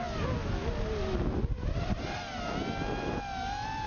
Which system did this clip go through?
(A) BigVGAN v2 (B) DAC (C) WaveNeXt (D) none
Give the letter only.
D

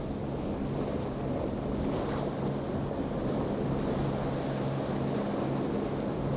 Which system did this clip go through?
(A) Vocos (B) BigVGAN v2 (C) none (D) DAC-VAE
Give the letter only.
C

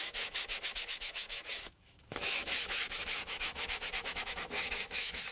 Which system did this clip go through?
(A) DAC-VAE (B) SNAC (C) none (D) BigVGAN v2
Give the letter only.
A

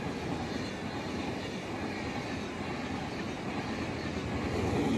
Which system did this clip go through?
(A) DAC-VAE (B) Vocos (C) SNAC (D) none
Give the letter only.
D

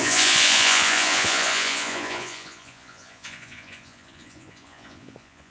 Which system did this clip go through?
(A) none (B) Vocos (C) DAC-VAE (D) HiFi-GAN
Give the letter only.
B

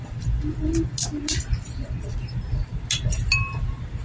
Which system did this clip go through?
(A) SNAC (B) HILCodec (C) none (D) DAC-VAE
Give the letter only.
C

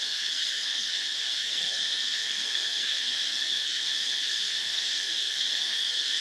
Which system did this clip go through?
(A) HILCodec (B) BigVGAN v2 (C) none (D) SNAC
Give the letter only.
D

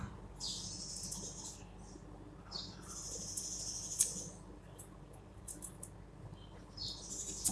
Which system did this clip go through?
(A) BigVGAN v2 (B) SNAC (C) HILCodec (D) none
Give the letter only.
D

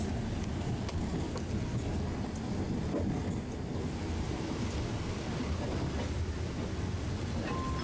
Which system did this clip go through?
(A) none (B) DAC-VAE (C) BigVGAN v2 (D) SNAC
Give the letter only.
A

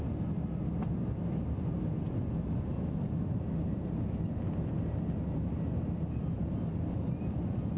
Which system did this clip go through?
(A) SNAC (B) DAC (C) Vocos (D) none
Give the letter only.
D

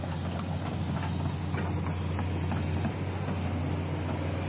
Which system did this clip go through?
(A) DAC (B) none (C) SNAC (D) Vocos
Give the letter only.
B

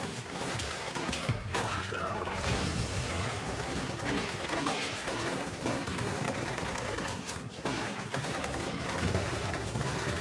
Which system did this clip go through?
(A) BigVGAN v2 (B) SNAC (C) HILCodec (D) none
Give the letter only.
B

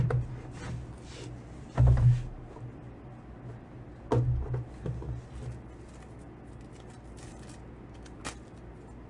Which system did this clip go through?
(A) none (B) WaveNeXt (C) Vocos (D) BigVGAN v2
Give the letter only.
A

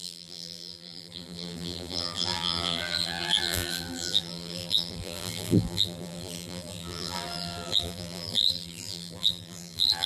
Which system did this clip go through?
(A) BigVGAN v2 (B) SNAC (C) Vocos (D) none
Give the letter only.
A